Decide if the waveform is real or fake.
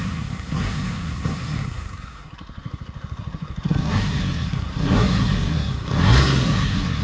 fake